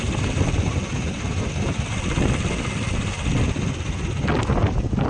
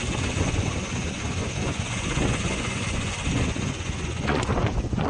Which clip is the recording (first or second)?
first